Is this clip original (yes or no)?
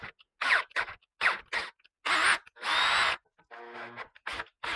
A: yes